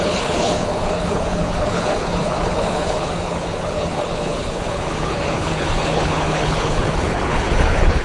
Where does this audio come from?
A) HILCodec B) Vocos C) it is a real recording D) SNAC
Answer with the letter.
A